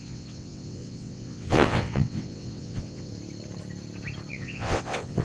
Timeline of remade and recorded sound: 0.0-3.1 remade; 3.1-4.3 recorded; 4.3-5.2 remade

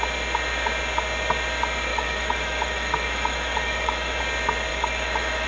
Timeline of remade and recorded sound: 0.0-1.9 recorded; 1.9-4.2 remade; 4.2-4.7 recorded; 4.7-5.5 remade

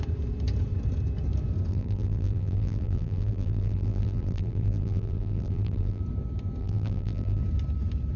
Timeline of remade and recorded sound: 0.0-1.7 recorded; 1.7-6.0 remade; 6.0-6.6 recorded; 6.6-7.4 remade; 7.4-8.2 recorded

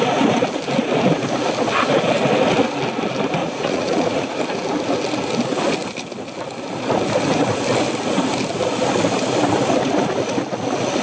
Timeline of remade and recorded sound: 0.0-3.4 recorded; 3.4-4.4 remade; 4.4-11.0 recorded